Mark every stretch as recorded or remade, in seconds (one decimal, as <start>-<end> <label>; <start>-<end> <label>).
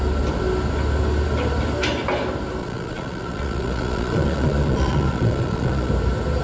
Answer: 0.0-2.6 recorded; 2.6-5.9 remade; 5.9-6.4 recorded